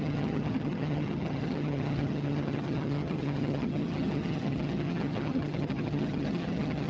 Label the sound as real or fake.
fake